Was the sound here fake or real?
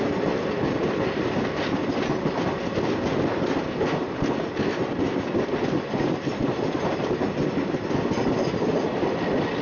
real